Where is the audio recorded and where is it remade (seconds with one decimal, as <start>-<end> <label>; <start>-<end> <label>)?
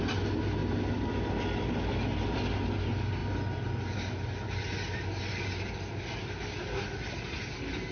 0.0-7.9 recorded